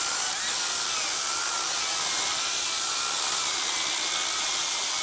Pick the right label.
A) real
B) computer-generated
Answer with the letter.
A